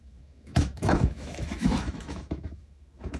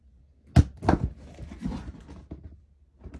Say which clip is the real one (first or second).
second